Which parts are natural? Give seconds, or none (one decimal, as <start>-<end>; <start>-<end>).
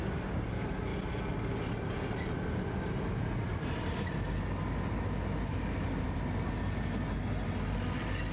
0.0-3.5; 4.1-5.5; 6.3-8.3